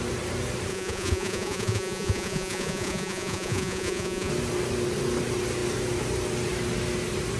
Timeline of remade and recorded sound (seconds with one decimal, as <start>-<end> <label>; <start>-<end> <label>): 0.0-0.7 recorded; 0.7-4.3 remade; 4.3-7.4 recorded